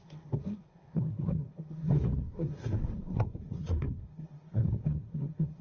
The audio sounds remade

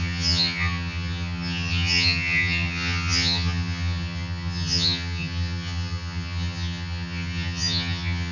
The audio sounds remade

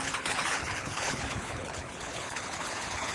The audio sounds remade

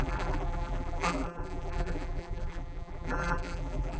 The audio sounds remade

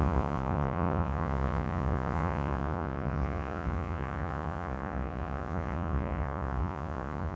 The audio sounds remade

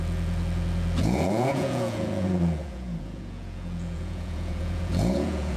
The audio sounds remade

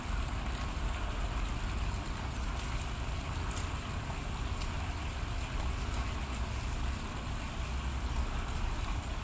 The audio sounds recorded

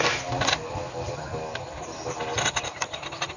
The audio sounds recorded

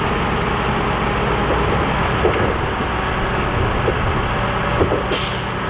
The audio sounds recorded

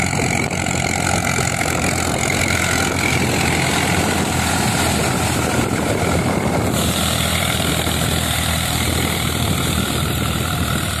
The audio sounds remade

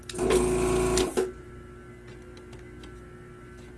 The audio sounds recorded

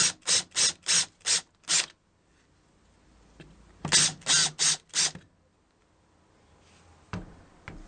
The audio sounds recorded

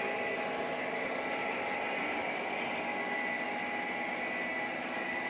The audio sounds recorded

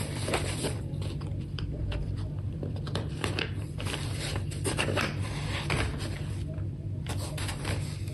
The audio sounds remade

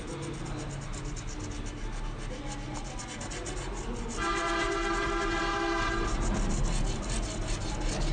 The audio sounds recorded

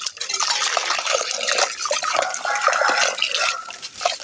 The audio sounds remade